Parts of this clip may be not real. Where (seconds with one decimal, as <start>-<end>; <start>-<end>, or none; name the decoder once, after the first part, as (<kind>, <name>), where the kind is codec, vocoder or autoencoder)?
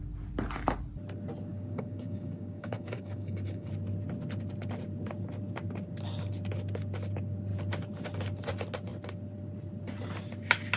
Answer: 1.5-3.7 (codec, DAC)